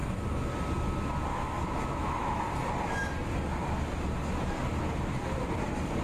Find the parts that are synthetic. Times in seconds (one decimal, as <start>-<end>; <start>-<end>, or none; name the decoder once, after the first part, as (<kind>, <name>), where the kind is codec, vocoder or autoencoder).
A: 0.0-0.5 (autoencoder, DAC-VAE); 1.3-2.4